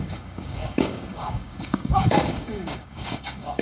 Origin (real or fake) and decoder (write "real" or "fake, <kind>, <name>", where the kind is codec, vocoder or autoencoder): fake, codec, DAC